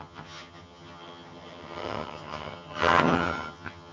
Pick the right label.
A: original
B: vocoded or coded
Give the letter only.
B